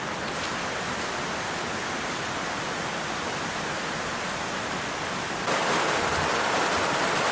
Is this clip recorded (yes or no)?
yes